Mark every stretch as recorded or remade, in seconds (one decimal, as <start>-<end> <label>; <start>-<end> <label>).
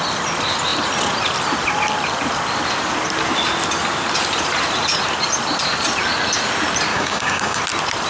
0.0-6.9 recorded; 6.9-7.6 remade; 7.6-8.1 recorded